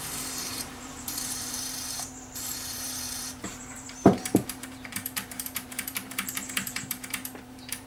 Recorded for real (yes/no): no